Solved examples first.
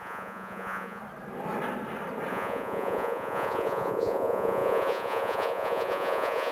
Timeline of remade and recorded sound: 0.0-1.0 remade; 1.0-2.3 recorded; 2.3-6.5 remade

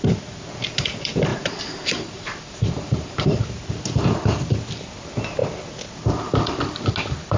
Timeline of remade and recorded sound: 0.0-1.3 recorded; 1.3-3.4 remade; 3.4-7.4 recorded

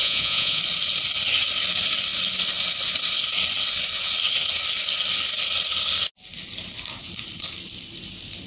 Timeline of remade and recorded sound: 0.0-0.6 remade; 0.6-8.5 recorded